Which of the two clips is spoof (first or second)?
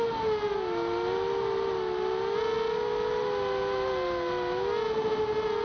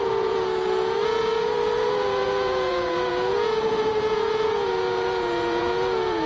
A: second